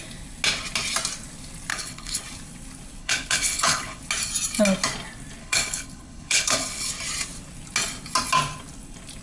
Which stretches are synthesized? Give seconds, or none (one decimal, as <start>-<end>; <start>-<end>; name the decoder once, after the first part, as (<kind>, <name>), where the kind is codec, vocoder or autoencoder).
1.7-2.2 (codec, HILCodec); 3.0-4.0; 5.4-6.9